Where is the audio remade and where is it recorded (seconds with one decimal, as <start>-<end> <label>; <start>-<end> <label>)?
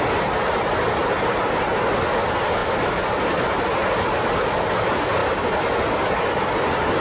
0.0-7.0 recorded